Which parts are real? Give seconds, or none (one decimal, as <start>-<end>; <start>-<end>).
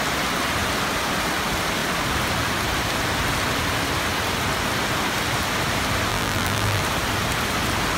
0.0-6.1; 6.8-8.0